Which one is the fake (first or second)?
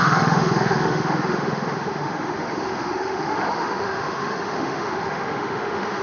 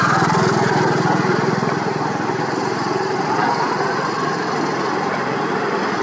first